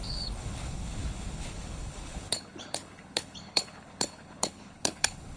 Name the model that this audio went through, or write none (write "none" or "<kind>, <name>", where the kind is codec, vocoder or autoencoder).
codec, HILCodec